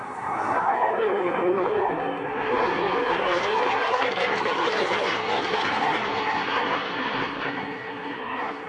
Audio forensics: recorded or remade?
remade